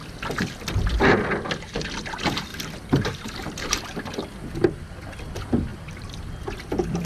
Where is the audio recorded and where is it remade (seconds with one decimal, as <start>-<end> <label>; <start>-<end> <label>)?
0.0-2.5 recorded; 2.5-4.0 remade; 4.0-5.7 recorded; 5.7-6.2 remade; 6.2-7.1 recorded

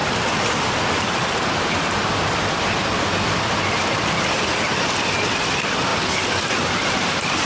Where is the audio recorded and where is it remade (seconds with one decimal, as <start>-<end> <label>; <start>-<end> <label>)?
0.0-4.5 remade; 4.5-7.5 recorded